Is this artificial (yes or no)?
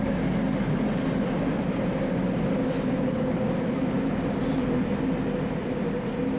no